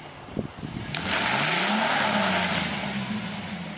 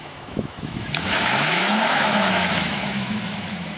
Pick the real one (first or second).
first